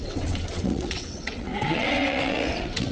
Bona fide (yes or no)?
no